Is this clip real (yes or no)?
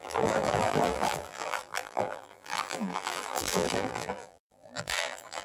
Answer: no